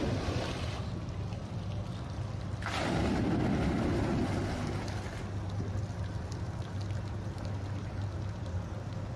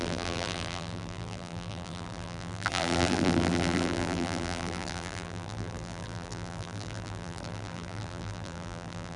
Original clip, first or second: first